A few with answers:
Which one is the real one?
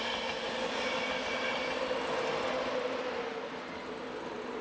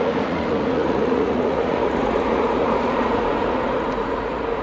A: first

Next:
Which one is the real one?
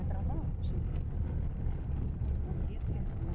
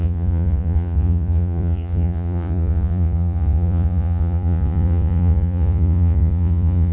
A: first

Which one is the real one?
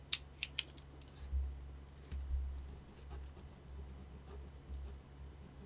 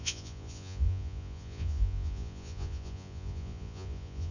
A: first